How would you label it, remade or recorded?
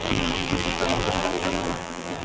remade